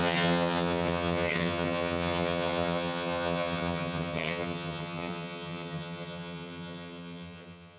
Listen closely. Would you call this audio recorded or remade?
remade